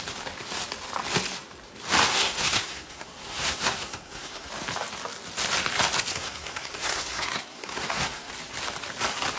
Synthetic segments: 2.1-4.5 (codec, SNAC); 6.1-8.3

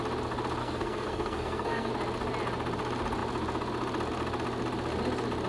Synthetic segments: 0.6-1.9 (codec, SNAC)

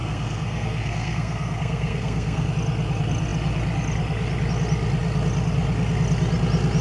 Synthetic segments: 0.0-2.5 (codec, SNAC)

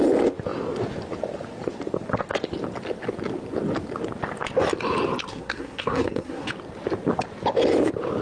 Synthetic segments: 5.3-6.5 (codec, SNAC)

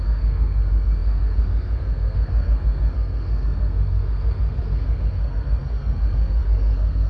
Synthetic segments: 0.0-7.1 (codec, SNAC)

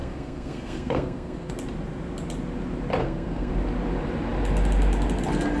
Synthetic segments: 0.0-1.5 (codec, SNAC); 3.0-3.5

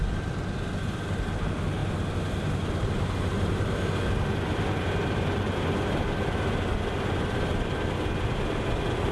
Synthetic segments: none